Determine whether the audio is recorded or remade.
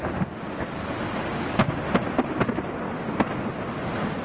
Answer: recorded